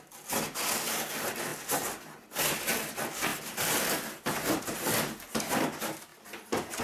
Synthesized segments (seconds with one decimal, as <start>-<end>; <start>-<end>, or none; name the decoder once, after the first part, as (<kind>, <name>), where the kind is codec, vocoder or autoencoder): 3.3-4.9 (vocoder, BigVGAN v2)